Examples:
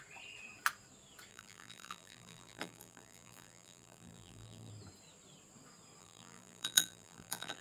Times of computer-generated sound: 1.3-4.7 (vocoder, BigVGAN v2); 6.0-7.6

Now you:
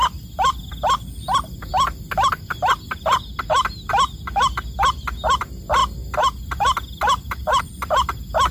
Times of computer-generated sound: none

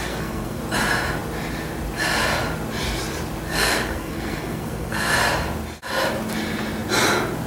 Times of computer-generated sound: 0.0-0.6 (codec, SNAC); 3.5-5.1